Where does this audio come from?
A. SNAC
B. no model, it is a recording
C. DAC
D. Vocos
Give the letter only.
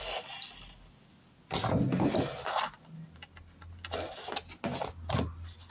B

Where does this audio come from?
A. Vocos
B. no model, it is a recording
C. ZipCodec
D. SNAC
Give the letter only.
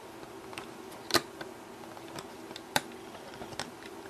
B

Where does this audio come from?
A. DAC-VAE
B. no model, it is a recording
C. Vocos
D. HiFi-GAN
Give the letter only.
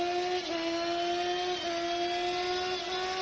B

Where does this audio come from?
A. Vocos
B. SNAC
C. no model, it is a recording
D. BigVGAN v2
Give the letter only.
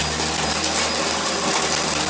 C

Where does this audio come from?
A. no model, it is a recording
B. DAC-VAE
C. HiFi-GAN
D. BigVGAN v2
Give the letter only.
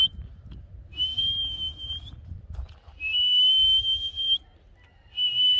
A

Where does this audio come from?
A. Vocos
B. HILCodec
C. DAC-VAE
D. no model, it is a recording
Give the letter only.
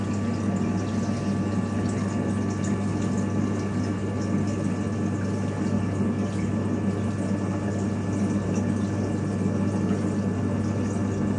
D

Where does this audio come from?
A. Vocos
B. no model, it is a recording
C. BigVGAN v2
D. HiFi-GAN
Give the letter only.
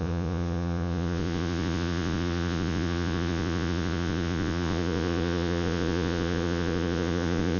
A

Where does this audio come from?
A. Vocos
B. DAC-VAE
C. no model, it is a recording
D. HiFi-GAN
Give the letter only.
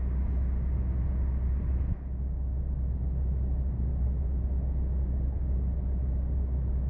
C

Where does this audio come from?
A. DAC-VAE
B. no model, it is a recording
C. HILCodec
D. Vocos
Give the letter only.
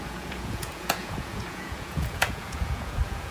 D